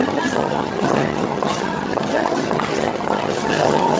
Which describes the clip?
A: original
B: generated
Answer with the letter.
B